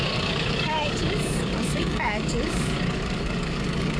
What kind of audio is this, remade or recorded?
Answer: remade